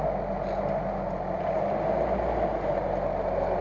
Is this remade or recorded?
recorded